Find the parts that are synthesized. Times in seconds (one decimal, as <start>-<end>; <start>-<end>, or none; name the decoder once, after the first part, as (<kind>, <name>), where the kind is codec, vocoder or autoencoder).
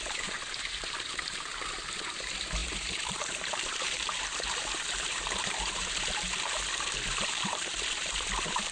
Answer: 0.0-8.7 (vocoder, BigVGAN v2)